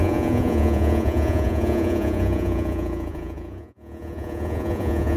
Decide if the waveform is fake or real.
fake